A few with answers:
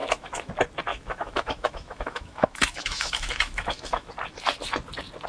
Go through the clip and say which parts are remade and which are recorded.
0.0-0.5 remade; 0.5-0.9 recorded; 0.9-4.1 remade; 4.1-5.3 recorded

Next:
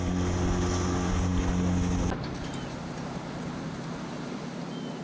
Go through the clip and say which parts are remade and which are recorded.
0.0-5.0 recorded

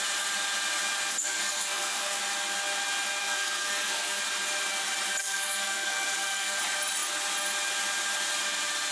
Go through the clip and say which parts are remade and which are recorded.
0.0-1.2 recorded; 1.2-2.2 remade; 2.2-3.2 recorded; 3.2-4.2 remade; 4.2-5.2 recorded; 5.2-6.6 remade; 6.6-8.9 recorded